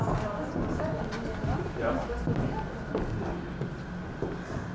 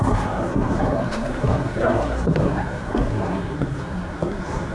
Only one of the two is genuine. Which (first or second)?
first